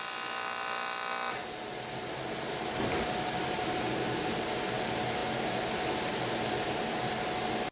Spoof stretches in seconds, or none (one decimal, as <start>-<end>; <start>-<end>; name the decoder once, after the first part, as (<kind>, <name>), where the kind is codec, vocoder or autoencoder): none